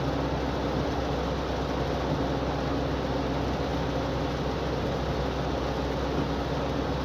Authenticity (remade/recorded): recorded